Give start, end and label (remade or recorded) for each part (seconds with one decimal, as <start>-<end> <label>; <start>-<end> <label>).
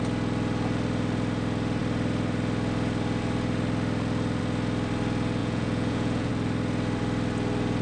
0.0-5.4 recorded; 5.4-6.3 remade; 6.3-7.8 recorded